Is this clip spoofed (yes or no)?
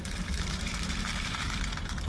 yes